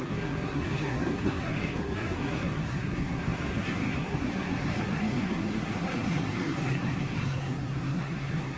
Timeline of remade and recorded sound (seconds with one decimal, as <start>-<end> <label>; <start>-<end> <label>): 0.0-8.6 remade